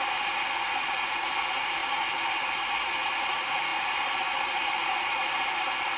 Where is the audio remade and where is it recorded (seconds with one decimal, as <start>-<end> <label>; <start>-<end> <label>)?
0.0-6.0 recorded